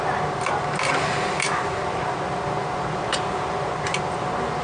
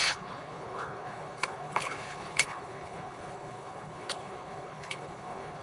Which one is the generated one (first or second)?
second